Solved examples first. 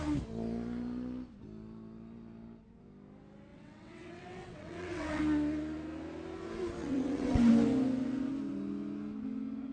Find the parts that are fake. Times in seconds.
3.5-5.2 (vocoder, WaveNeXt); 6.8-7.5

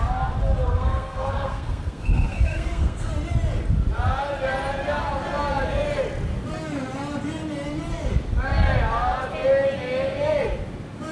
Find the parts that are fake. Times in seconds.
0.6-3.1 (codec, SNAC)

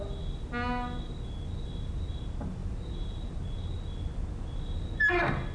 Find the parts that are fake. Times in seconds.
2.6-3.1 (vocoder, BigVGAN v2)

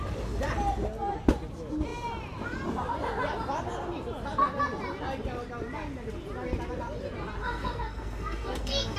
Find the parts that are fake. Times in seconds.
7.4-9.0 (codec, SNAC)

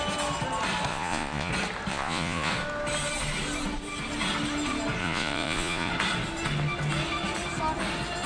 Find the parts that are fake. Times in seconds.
0.9-1.5 (vocoder, Vocos); 1.9-2.5; 5.0-5.9